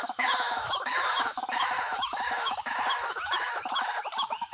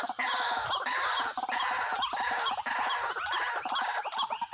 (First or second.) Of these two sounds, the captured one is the second